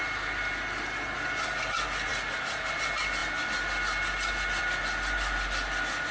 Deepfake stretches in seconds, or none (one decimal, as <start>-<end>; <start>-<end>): none